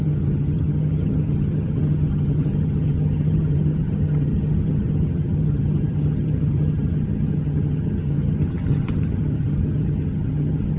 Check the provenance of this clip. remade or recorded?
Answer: remade